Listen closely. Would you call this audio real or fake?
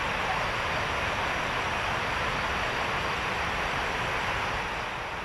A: real